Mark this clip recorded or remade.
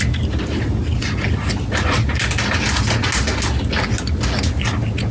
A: recorded